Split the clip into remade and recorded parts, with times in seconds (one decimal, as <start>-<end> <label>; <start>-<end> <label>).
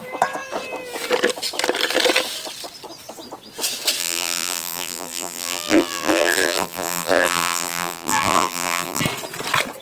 0.0-4.0 recorded; 4.0-9.0 remade; 9.0-9.8 recorded